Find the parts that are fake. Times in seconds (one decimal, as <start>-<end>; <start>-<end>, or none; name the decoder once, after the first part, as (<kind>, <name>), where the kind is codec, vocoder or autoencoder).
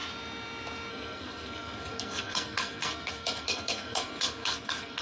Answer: 0.9-5.0 (codec, SNAC)